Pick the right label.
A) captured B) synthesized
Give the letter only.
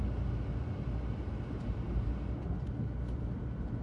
A